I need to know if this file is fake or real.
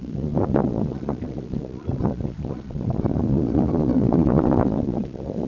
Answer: fake